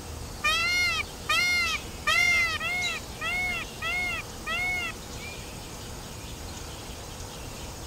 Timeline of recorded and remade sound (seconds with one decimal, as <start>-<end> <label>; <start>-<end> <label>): 0.0-7.9 recorded